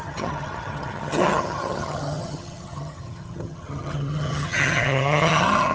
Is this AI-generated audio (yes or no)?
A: yes